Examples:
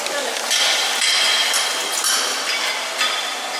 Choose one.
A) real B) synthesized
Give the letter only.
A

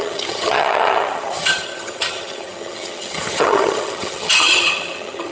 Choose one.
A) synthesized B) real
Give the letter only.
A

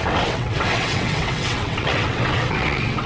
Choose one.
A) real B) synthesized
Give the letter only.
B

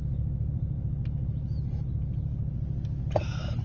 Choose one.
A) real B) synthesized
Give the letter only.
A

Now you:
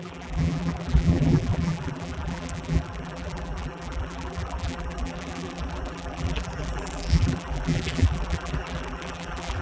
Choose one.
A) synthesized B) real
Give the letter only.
A